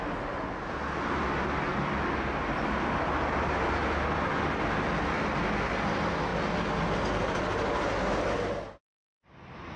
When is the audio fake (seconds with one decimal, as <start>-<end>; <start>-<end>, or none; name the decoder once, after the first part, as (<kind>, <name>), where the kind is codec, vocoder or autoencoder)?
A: none